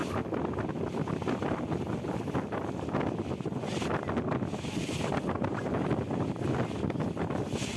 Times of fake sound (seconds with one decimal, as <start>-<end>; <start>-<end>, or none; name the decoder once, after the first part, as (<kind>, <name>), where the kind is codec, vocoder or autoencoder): none